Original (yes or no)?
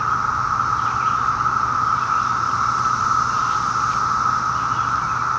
yes